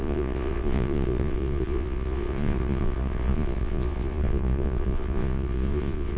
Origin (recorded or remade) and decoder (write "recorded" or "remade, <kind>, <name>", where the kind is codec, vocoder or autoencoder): remade, vocoder, Vocos